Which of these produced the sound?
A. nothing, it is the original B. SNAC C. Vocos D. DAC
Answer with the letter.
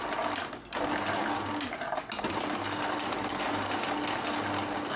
A